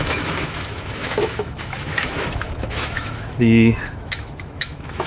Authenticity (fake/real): fake